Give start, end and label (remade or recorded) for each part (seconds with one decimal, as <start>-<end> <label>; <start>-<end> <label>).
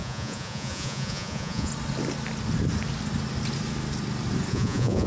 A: 0.0-1.7 remade; 1.7-4.5 recorded; 4.5-5.1 remade